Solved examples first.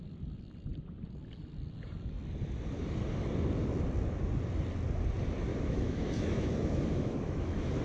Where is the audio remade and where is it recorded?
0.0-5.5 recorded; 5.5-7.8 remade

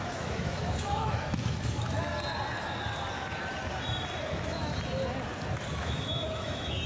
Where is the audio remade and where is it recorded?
0.0-2.1 remade; 2.1-4.2 recorded; 4.2-4.7 remade; 4.7-5.7 recorded; 5.7-6.9 remade

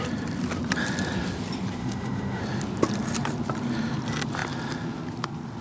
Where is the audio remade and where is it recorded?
0.0-1.8 recorded; 1.8-2.4 remade; 2.4-5.6 recorded

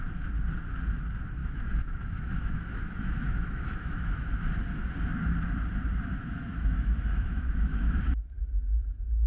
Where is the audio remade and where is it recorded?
0.0-1.4 recorded; 1.4-4.3 remade; 4.3-6.2 recorded; 6.2-8.4 remade; 8.4-9.3 recorded

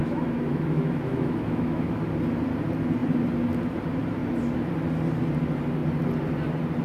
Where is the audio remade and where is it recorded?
0.0-2.0 remade; 2.0-6.8 recorded

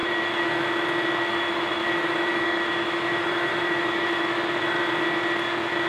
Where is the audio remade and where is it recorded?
0.0-0.6 remade; 0.6-1.3 recorded; 1.3-4.8 remade; 4.8-5.9 recorded

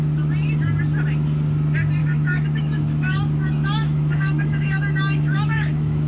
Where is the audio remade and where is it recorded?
0.0-2.0 recorded; 2.0-6.1 remade

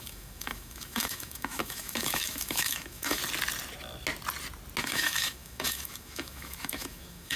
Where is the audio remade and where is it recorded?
0.0-3.2 remade; 3.2-4.8 recorded; 4.8-7.4 remade